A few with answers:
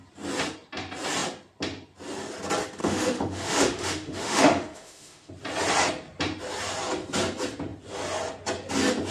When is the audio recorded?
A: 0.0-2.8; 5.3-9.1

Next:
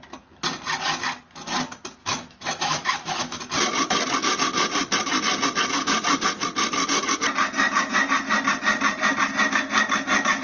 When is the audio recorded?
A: 0.0-2.0; 3.4-10.4

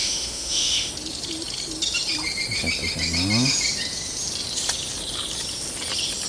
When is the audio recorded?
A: 0.9-6.3

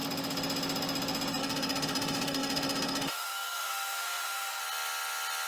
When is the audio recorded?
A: 0.0-1.4; 4.6-5.5